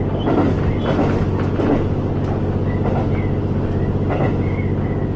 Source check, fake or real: real